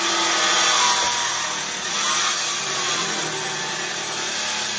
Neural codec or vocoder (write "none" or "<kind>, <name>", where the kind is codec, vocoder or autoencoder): none